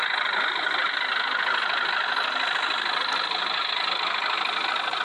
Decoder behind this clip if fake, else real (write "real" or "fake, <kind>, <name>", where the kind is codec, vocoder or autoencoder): real